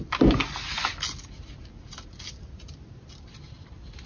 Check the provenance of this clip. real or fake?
real